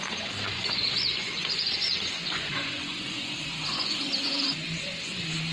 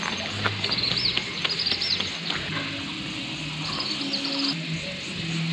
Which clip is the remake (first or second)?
first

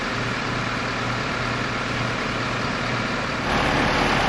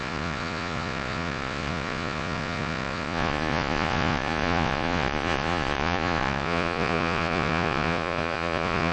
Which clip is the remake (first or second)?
second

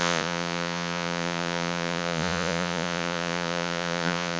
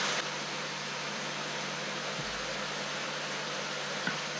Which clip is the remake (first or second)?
first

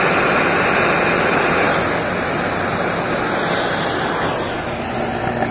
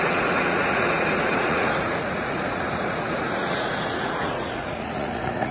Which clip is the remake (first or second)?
second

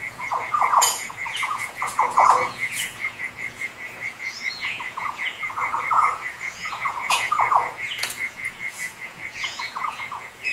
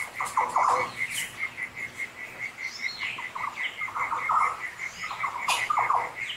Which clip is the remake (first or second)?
first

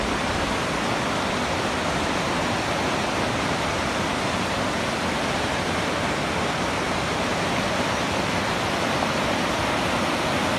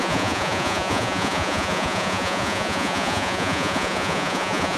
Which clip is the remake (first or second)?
second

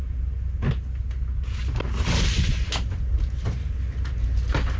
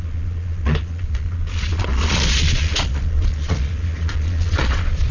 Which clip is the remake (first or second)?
second